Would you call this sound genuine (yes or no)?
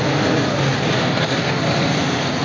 yes